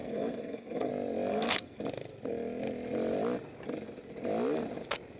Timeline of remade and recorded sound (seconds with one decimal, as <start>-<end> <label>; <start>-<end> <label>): 0.0-0.9 remade; 0.9-1.3 recorded; 1.3-1.8 remade; 1.8-5.2 recorded